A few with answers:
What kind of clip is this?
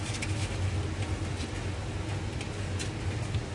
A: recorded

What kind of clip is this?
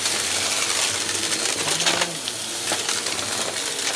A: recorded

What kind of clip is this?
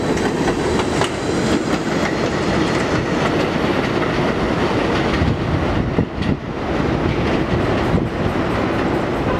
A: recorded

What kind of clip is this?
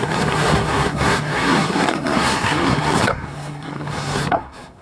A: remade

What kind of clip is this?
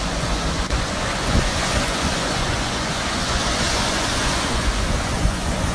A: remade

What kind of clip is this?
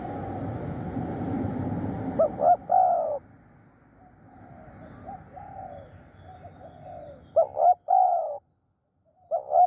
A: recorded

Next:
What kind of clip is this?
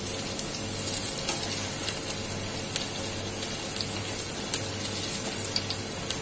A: recorded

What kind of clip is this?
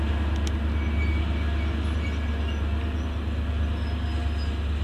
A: recorded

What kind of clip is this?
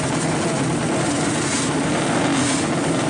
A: recorded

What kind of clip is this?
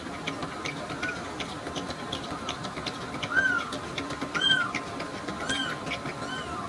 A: recorded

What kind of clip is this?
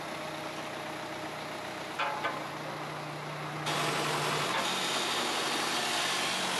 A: recorded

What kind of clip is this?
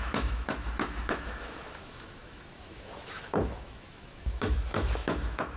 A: remade